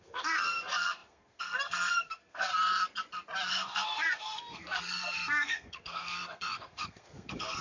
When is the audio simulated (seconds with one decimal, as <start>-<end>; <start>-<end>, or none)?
0.0-2.5; 3.5-7.6